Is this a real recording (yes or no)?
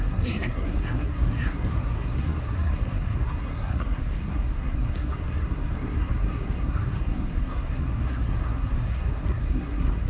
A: no